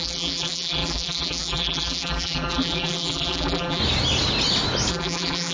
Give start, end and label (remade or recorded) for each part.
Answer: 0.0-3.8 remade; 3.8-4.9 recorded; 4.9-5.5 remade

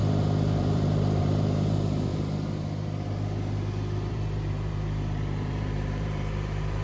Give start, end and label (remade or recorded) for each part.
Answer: 0.0-0.6 recorded; 0.6-2.1 remade; 2.1-4.1 recorded; 4.1-6.8 remade

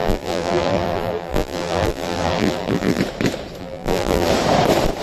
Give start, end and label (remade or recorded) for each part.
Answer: 0.0-3.0 remade; 3.0-3.6 recorded; 3.6-4.3 remade; 4.3-5.0 recorded

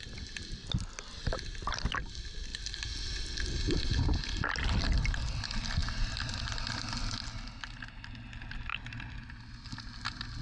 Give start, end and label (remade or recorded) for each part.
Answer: 0.0-8.7 recorded; 8.7-9.5 remade; 9.5-10.4 recorded